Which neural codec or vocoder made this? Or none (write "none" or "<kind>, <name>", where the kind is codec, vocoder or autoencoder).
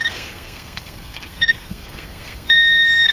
codec, SNAC